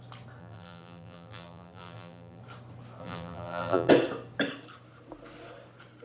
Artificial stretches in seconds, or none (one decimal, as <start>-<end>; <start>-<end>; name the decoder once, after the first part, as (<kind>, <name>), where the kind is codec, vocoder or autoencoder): 0.4-2.4 (vocoder, BigVGAN v2); 3.0-3.9